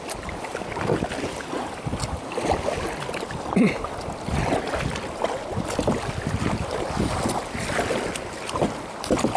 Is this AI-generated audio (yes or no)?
no